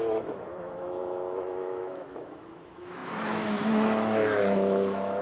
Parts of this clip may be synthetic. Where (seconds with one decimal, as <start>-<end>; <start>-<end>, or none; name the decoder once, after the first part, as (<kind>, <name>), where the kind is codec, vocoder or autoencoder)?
0.0-5.2 (autoencoder, DAC-VAE)